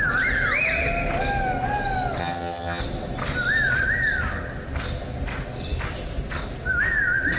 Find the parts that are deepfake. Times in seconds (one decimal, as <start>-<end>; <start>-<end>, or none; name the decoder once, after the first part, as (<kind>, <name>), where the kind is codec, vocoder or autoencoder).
2.2-2.8 (vocoder, HiFi-GAN)